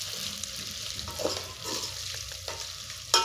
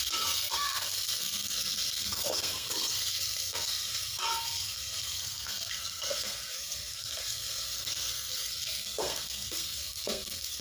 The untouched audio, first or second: first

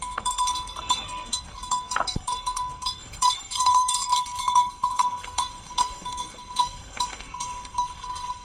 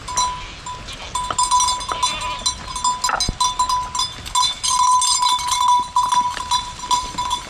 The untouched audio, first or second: second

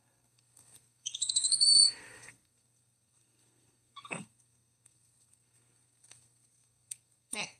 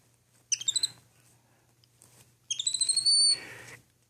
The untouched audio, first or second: second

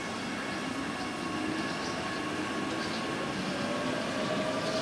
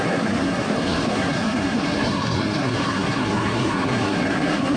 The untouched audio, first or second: first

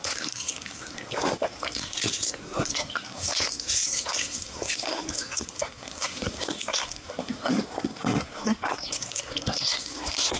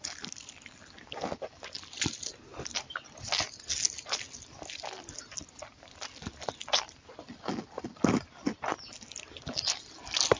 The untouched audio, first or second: second